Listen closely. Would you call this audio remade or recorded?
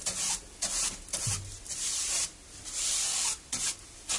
recorded